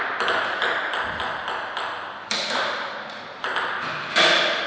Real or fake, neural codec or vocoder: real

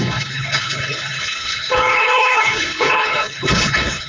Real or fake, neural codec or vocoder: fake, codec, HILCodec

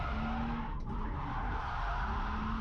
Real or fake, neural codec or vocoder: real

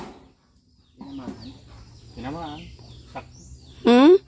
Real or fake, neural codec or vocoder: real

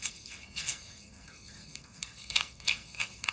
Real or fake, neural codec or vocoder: fake, codec, SNAC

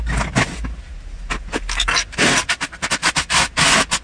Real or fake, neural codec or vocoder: real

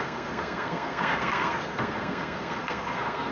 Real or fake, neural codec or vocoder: fake, codec, SNAC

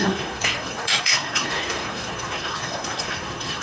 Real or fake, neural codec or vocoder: fake, codec, SNAC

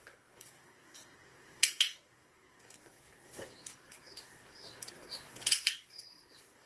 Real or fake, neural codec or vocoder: fake, codec, SNAC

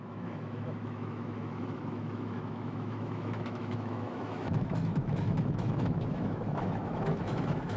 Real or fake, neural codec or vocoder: fake, autoencoder, DAC-VAE